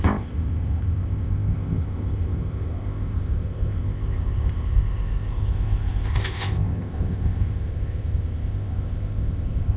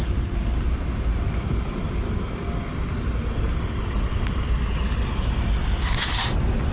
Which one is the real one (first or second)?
second